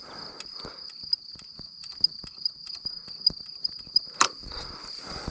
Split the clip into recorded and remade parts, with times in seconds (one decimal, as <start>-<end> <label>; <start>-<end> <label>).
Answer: 0.0-5.3 recorded